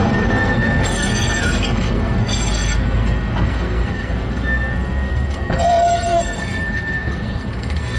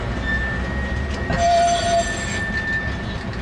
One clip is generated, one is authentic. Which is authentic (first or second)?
second